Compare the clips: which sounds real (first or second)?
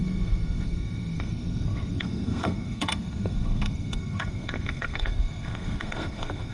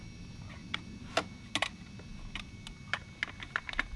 second